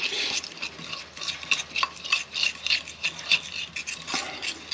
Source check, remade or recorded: recorded